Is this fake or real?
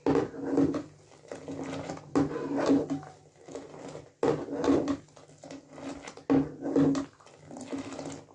real